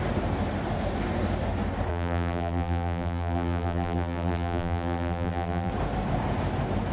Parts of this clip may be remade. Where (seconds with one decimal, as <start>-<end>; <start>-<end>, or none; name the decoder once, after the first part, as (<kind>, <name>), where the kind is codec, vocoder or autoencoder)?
1.9-5.7 (vocoder, BigVGAN v2)